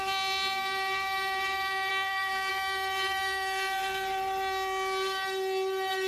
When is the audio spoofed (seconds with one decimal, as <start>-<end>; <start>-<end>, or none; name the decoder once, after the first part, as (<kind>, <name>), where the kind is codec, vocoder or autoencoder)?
1.9-2.5 (codec, SNAC)